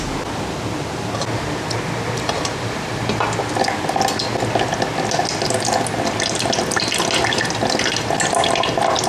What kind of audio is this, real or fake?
real